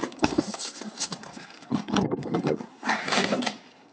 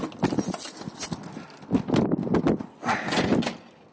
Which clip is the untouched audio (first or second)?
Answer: second